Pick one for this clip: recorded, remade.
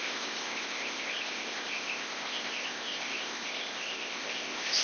remade